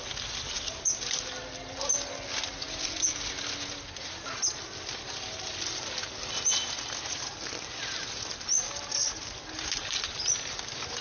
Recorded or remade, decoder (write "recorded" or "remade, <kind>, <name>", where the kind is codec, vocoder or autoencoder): recorded